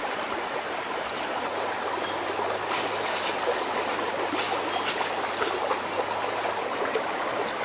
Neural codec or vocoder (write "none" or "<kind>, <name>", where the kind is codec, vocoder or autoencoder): none